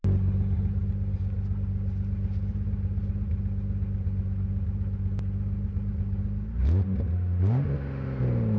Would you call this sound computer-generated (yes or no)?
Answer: no